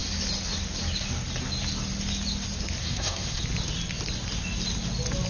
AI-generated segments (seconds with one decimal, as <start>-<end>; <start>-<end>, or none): 2.8-3.4